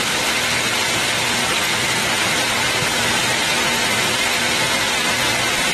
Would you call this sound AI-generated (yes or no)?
no